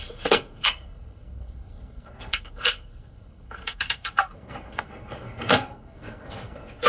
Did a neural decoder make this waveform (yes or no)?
yes